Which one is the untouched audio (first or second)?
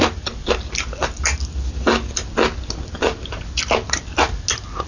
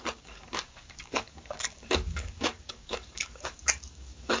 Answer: first